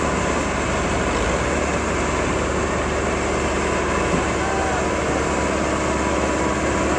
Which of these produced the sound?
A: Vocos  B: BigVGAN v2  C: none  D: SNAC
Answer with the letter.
C